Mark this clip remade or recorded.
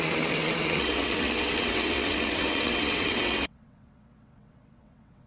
remade